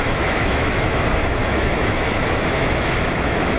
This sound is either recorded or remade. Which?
remade